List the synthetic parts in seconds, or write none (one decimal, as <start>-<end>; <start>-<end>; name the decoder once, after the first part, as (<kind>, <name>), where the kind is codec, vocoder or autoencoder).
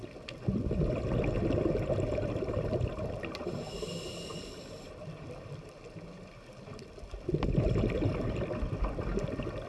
none